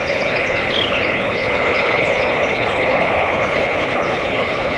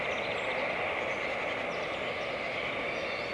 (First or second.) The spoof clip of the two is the first